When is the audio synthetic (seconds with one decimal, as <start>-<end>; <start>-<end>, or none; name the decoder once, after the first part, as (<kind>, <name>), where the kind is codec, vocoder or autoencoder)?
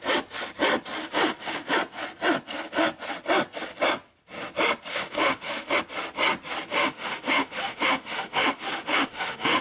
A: 1.0-1.7 (autoencoder, DAC-VAE); 4.9-5.8; 6.7-9.6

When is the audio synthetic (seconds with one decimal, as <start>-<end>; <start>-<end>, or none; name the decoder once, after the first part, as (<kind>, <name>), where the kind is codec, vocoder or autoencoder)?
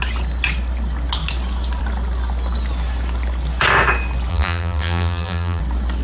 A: 4.3-5.6 (vocoder, BigVGAN v2)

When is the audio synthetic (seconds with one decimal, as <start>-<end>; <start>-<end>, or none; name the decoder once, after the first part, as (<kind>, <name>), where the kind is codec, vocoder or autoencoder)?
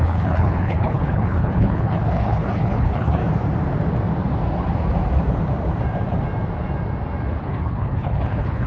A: 0.0-3.2 (codec, HILCodec); 7.4-8.7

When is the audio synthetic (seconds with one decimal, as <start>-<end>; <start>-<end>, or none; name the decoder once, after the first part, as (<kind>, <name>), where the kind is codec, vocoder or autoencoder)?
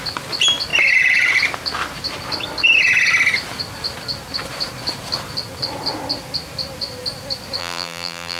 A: 7.6-8.4 (vocoder, BigVGAN v2)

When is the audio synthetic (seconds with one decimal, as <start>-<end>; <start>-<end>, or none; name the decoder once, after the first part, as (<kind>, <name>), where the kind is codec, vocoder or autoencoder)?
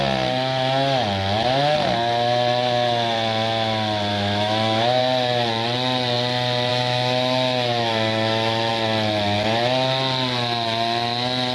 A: 4.1-5.0 (autoencoder, DAC-VAE); 6.7-8.7